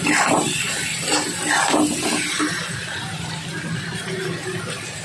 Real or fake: real